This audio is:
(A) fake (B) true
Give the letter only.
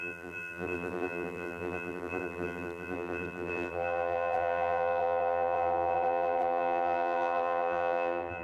A